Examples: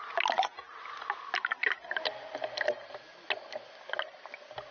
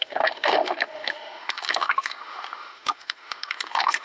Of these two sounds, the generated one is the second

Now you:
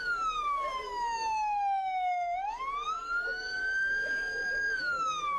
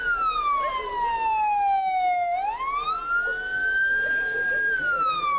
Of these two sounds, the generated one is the first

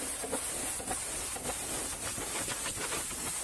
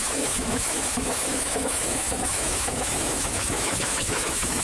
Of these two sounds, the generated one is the second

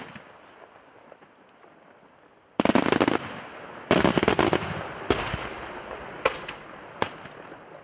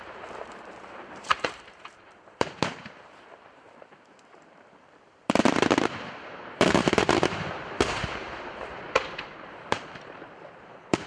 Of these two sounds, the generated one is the second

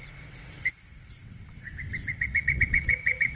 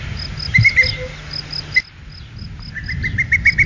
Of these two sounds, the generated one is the first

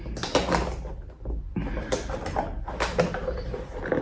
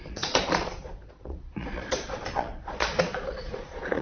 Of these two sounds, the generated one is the second